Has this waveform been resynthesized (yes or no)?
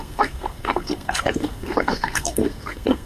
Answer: yes